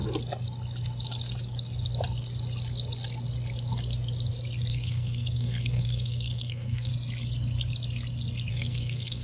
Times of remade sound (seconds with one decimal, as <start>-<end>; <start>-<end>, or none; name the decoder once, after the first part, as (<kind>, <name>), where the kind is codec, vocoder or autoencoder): 4.7-6.9 (codec, SNAC); 8.5-9.2